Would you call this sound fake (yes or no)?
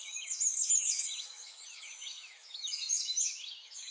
yes